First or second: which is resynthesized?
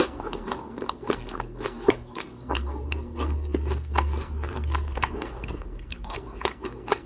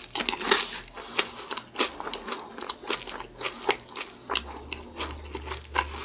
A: first